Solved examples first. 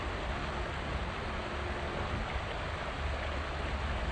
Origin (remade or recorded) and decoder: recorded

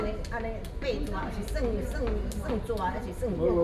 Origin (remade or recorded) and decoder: recorded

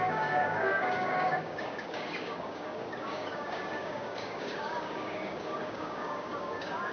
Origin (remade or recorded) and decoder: remade, codec, DAC